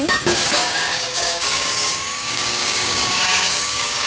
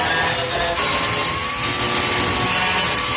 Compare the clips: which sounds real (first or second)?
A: second